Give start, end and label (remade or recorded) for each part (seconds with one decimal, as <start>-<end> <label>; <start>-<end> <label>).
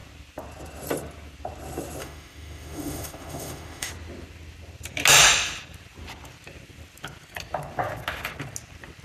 0.0-2.0 recorded; 2.0-3.9 remade; 3.9-9.0 recorded